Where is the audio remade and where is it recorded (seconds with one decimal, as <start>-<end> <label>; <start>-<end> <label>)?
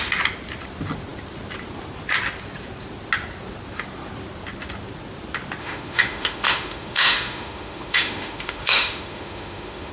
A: 0.0-5.6 recorded; 5.6-9.9 remade